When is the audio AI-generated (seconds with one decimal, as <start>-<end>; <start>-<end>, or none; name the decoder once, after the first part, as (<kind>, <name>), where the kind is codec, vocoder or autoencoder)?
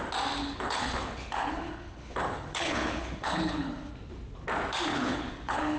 0.4-3.9 (codec, HILCodec); 4.9-5.8